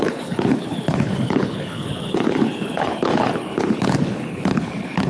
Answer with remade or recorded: remade